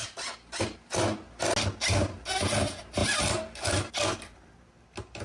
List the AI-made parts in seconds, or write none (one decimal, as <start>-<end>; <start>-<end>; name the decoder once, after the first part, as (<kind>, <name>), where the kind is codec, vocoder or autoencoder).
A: 3.0-3.9 (vocoder, BigVGAN v2)

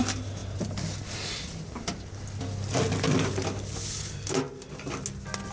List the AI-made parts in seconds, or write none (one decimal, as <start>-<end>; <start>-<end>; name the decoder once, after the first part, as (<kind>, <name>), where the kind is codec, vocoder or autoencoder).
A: 0.4-3.7 (vocoder, BigVGAN v2)

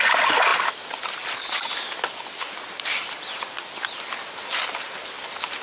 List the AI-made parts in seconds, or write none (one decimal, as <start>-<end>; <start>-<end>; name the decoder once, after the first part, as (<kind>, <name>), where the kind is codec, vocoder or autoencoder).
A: none